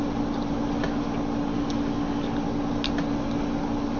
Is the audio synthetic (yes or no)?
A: no